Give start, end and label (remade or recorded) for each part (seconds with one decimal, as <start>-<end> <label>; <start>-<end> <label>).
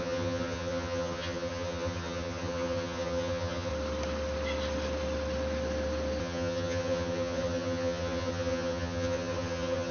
0.0-3.7 remade; 3.7-6.2 recorded; 6.2-9.9 remade